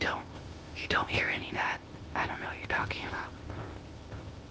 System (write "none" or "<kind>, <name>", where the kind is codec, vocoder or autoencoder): codec, ZipCodec